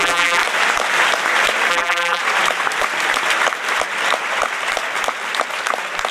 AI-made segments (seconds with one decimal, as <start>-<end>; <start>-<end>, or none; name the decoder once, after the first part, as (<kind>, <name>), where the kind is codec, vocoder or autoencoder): 0.0-0.4 (vocoder, BigVGAN v2); 1.7-2.2